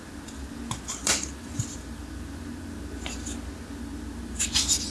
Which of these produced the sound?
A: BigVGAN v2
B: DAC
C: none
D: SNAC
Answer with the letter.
C